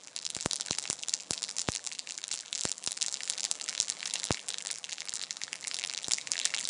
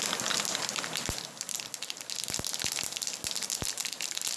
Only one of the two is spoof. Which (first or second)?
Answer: first